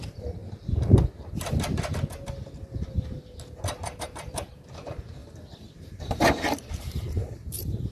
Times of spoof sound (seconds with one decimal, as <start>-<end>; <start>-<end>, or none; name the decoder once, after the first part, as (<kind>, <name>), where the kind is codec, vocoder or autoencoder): 0.0-0.4 (vocoder, BigVGAN v2); 4.0-5.2; 5.7-7.9